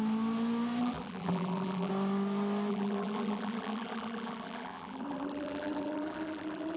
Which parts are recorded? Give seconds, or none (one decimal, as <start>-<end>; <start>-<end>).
0.0-0.8; 1.9-2.7